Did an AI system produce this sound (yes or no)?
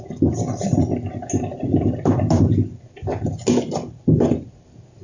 no